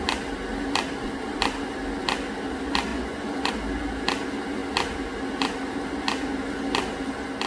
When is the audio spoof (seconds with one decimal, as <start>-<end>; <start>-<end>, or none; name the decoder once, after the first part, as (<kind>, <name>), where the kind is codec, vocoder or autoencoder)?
2.9-3.5 (vocoder, Vocos)